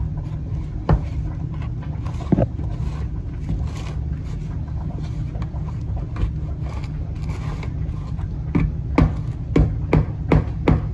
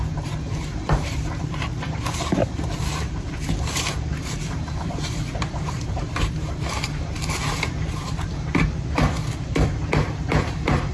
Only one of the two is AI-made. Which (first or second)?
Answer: second